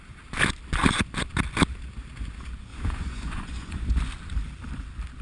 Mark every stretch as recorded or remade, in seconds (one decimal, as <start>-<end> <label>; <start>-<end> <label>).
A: 0.0-2.7 recorded; 2.7-3.9 remade; 3.9-5.2 recorded